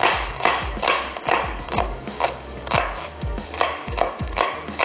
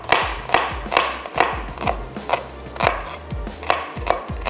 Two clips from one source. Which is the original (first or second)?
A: second